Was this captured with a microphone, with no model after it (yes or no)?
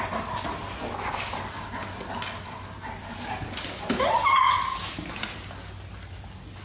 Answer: yes